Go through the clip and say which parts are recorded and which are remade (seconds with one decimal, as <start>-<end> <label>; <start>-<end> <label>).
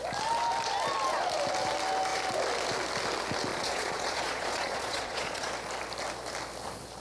0.0-3.5 recorded; 3.5-5.5 remade; 5.5-7.0 recorded